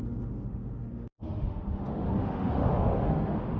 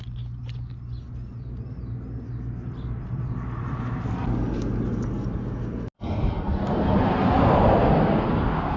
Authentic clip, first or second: second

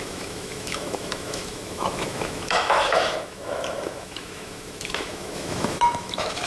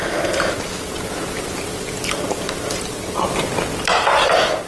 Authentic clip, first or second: second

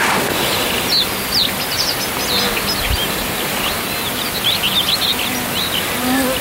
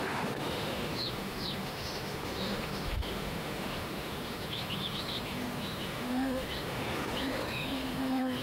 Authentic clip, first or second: first